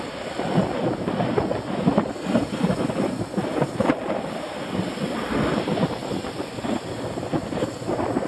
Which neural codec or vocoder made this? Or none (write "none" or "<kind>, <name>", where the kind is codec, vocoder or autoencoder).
none